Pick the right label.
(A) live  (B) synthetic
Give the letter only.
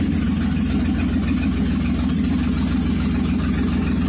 A